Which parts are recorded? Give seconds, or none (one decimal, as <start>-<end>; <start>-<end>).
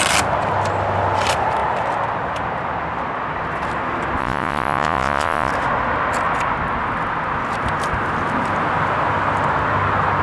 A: 0.0-4.2; 5.5-10.2